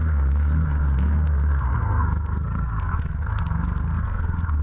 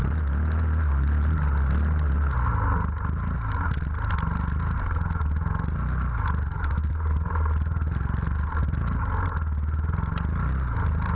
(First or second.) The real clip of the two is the second